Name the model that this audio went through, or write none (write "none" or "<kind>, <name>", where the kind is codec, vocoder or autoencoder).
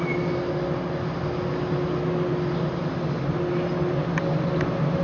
none